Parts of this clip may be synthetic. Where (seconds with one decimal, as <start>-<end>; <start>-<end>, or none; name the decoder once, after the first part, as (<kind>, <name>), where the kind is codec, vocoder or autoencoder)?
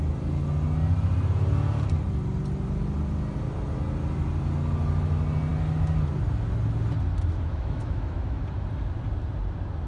7.5-8.4 (autoencoder, DAC-VAE)